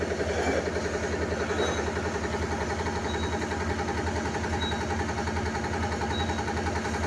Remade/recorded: recorded